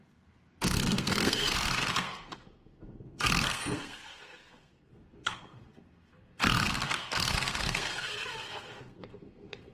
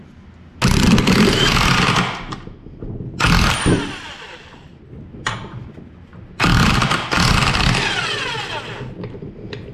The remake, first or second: first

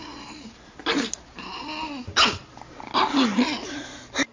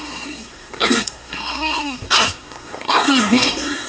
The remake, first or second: second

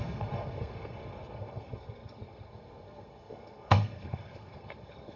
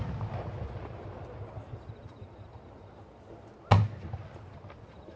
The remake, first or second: first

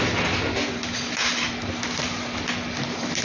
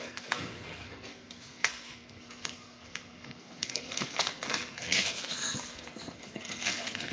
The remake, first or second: second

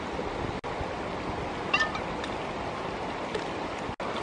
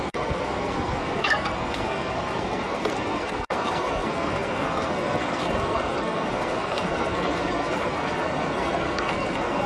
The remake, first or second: second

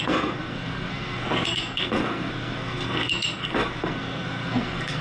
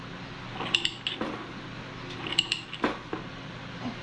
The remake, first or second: first